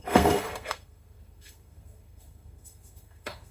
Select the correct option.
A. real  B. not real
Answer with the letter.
B